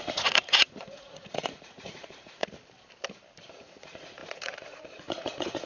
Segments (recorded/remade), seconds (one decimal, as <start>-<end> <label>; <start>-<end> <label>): 0.0-2.4 remade; 2.4-3.5 recorded; 3.5-5.7 remade